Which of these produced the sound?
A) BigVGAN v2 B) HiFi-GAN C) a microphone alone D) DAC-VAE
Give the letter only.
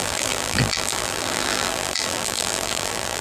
A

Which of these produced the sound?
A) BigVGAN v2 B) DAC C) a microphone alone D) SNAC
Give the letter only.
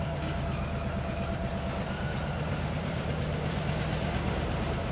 A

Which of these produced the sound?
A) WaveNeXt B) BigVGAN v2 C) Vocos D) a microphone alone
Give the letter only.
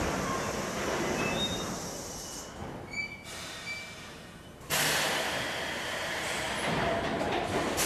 D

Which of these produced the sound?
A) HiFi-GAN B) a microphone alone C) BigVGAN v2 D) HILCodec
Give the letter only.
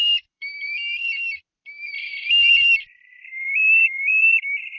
C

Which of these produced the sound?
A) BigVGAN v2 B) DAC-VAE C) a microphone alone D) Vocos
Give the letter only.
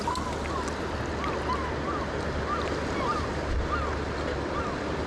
C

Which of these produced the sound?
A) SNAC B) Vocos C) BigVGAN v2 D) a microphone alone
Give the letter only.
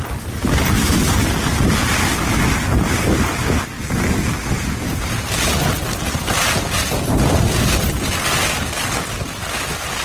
D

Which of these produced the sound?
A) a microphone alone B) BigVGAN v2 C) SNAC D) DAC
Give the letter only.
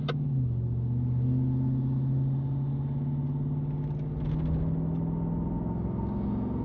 A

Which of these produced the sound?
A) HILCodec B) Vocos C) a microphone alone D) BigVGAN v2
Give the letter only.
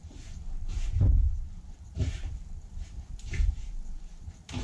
D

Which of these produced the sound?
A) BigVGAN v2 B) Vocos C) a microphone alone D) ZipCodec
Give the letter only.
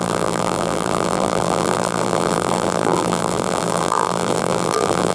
A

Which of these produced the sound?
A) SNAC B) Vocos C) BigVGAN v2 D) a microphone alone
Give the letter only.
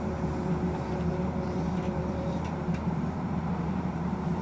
C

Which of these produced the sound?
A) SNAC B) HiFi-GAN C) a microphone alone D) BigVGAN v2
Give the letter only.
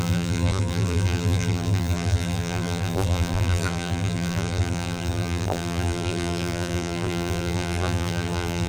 D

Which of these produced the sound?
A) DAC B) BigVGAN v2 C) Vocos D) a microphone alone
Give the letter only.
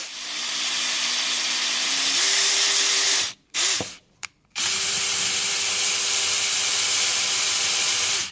B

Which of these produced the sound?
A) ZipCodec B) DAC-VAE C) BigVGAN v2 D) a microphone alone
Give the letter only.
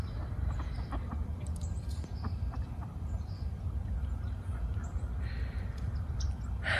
C